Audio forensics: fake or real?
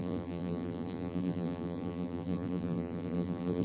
fake